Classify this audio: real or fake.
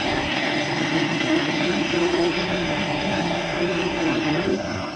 fake